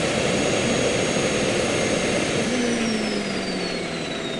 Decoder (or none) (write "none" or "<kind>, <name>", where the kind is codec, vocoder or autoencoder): none